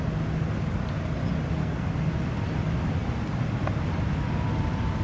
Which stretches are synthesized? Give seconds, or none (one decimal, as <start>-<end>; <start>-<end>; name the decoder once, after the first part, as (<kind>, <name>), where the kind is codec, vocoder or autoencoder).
1.6-2.1 (codec, SNAC)